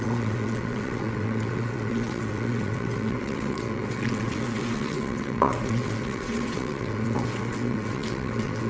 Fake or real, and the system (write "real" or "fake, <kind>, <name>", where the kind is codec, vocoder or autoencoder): fake, vocoder, WaveNeXt